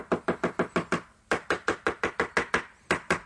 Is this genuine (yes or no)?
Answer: yes